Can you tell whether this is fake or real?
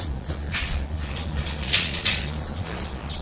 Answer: fake